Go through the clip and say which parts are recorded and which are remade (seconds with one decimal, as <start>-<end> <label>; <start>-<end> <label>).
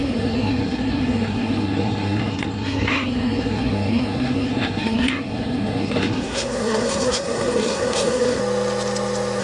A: 0.0-8.4 remade; 8.4-9.4 recorded